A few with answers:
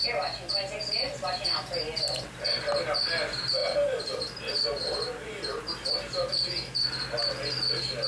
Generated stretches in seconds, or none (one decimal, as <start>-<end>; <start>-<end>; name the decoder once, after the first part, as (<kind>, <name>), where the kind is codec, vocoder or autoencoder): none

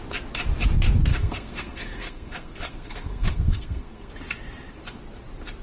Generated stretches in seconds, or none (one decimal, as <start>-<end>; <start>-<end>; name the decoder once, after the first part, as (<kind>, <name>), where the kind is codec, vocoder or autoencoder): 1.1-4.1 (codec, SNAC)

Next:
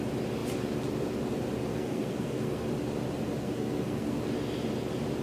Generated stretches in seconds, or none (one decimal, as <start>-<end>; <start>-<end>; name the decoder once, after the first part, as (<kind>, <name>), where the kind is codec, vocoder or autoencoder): 1.7-2.7 (codec, SNAC); 3.4-4.2

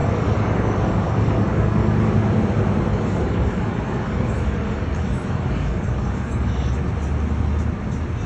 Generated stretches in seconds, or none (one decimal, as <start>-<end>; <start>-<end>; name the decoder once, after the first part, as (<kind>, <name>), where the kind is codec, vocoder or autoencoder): 0.0-2.1 (codec, DAC); 2.9-6.8